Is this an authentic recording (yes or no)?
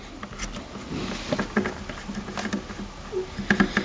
yes